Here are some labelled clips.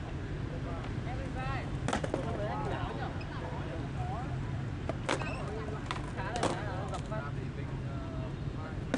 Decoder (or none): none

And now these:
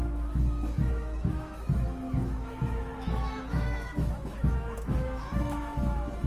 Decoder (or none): autoencoder, DAC-VAE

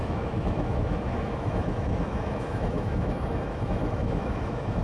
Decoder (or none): autoencoder, DAC-VAE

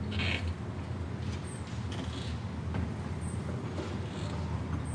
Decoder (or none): none